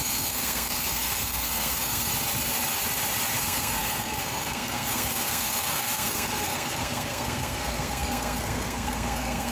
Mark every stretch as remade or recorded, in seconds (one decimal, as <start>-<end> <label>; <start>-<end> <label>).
0.0-2.1 remade; 2.1-3.4 recorded; 3.4-9.5 remade